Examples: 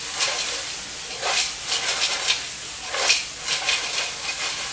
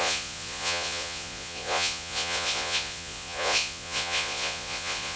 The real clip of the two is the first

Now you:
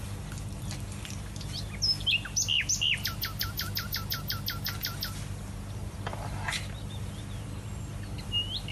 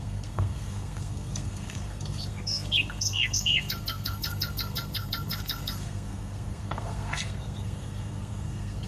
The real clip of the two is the first